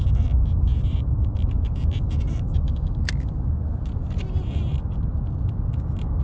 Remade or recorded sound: recorded